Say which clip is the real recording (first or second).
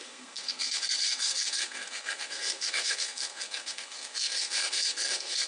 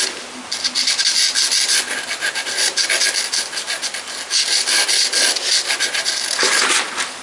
second